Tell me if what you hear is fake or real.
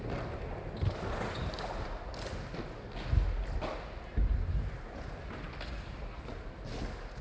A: real